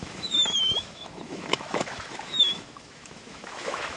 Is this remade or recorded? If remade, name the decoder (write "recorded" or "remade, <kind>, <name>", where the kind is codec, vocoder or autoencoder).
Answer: remade, autoencoder, DAC-VAE